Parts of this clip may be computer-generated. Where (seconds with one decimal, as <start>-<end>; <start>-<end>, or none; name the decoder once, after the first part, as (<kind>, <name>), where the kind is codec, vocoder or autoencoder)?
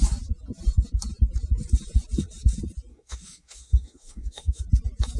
2.9-4.6 (autoencoder, DAC-VAE)